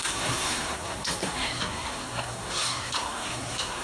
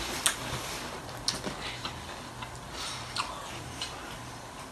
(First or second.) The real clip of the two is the second